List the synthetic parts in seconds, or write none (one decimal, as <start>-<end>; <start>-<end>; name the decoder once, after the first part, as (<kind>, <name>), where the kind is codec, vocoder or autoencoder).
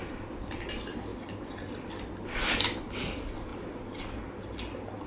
1.1-2.0 (vocoder, BigVGAN v2)